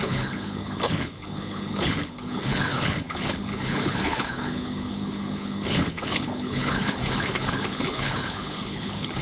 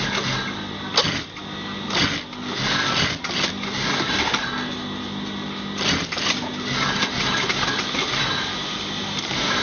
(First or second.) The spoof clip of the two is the first